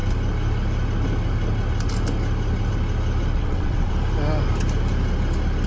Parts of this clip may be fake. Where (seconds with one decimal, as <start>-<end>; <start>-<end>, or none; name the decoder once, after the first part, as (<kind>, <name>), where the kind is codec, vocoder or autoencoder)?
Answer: 3.3-3.9 (vocoder, WaveNeXt)